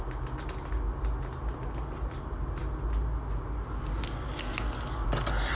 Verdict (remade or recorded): recorded